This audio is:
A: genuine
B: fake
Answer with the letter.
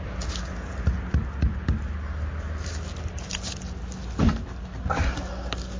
A